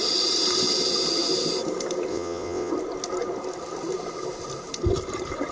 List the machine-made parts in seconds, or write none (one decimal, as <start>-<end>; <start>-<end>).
2.1-2.7